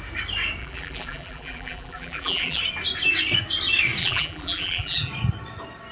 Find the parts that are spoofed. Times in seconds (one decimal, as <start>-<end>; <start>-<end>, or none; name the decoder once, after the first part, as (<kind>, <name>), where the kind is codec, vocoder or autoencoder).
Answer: 0.6-2.6 (vocoder, BigVGAN v2); 4.0-5.1